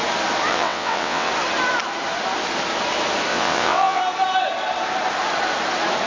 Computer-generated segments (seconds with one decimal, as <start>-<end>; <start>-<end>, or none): 0.5-1.3; 3.3-4.0